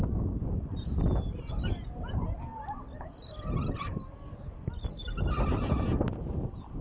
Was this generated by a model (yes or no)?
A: no